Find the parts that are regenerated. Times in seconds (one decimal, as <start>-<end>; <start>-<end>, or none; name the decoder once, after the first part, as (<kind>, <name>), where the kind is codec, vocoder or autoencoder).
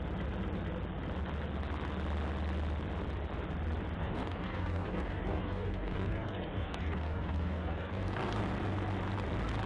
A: 4.0-8.4 (codec, DAC)